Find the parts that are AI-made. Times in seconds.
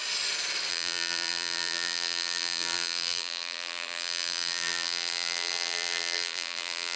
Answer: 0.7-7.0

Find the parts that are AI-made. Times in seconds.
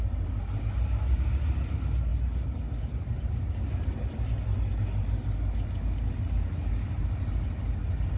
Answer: none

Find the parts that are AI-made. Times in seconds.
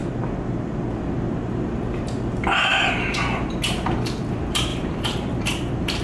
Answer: 1.3-2.7; 4.3-6.0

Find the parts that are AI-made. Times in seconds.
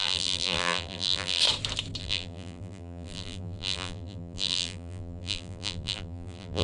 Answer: 0.0-1.4; 2.0-6.6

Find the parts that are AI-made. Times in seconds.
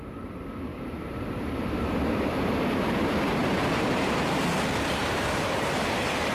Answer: 0.7-1.2; 3.4-4.4; 5.0-6.3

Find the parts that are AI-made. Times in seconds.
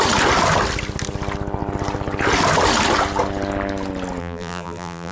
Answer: 4.2-5.1